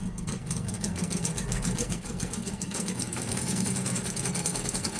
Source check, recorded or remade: remade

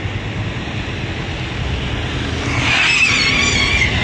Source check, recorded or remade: recorded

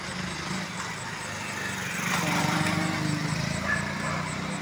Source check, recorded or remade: recorded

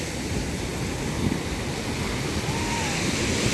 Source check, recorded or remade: recorded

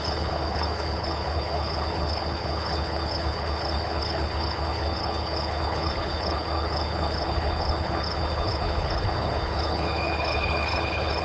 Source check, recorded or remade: remade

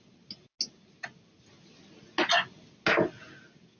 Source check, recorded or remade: recorded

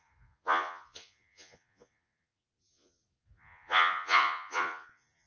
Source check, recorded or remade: remade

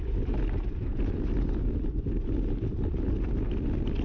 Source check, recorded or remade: recorded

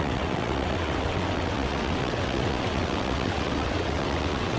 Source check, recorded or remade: remade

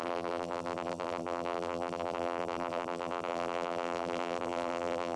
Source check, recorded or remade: remade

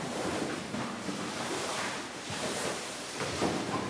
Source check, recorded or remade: remade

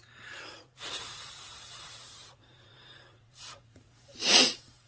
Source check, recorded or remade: remade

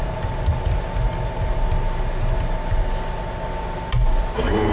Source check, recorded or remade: recorded